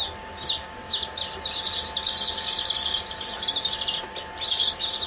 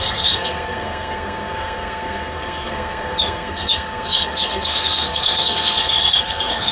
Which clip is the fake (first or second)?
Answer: second